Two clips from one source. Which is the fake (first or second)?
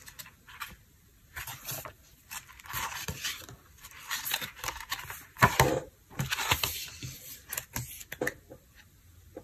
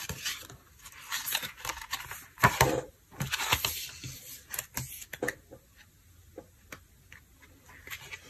first